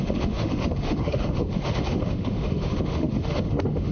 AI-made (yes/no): yes